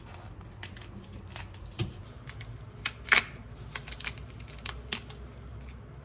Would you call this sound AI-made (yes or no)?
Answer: no